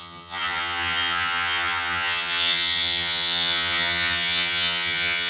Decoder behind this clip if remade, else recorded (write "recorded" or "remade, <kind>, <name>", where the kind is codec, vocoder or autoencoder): remade, vocoder, HiFi-GAN